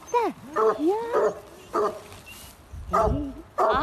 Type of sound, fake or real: real